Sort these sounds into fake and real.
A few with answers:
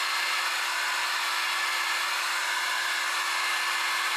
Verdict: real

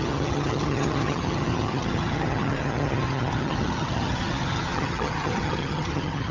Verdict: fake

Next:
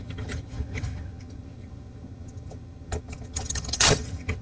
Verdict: fake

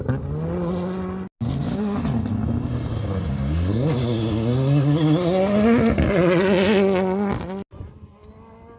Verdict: real